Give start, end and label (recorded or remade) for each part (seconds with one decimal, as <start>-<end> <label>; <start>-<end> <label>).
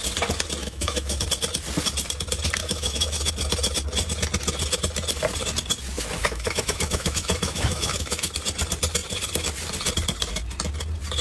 0.0-0.6 recorded; 0.6-1.2 remade; 1.2-2.6 recorded; 2.6-3.3 remade; 3.3-6.2 recorded; 6.2-8.3 remade; 8.3-11.2 recorded